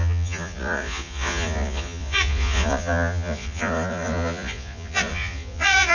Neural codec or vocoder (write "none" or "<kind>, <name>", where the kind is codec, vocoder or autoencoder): vocoder, Vocos